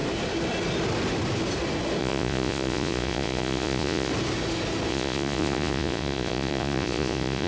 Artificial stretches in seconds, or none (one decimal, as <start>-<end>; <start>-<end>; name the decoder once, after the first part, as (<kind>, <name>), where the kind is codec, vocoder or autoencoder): 2.0-4.1 (vocoder, Vocos); 4.9-7.5